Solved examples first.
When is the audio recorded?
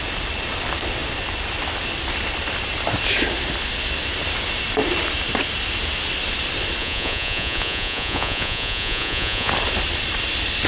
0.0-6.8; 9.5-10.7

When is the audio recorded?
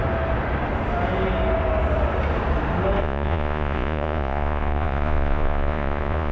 0.0-3.0